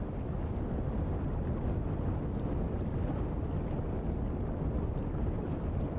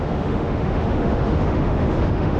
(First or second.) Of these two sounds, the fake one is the second